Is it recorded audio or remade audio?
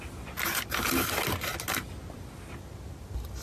recorded